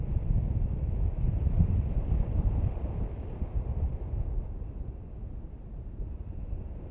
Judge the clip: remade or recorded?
recorded